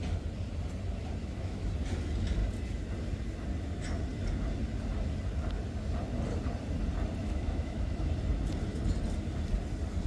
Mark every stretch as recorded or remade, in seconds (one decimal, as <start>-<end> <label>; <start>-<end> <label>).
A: 0.0-1.2 recorded; 1.2-1.7 remade; 1.7-7.2 recorded; 7.2-8.1 remade; 8.1-10.1 recorded